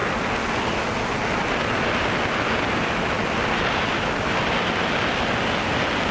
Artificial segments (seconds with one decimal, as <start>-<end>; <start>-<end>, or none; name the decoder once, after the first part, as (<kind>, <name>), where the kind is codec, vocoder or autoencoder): none